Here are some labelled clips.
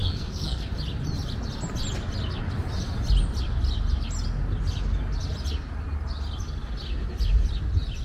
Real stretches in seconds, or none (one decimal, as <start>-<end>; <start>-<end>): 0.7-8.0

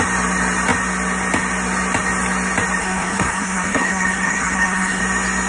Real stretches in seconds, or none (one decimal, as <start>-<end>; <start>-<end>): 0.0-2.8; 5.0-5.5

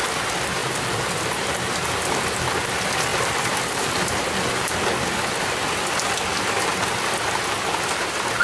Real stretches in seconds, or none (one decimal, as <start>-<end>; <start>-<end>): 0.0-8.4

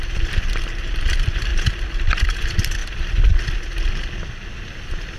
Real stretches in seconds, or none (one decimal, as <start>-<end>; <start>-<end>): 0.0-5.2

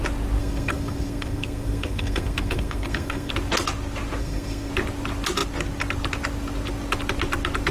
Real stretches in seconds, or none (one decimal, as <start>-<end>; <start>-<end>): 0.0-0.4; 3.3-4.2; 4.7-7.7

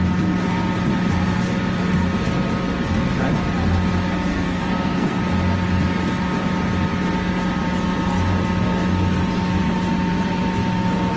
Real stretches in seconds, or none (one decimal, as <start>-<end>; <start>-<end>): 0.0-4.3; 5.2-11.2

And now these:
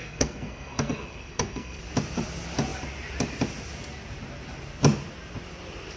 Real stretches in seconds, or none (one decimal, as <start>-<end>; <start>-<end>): 1.8-6.0